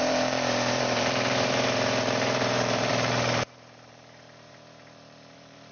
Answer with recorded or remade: remade